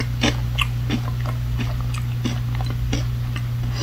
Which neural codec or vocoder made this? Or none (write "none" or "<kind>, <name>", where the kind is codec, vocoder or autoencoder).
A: none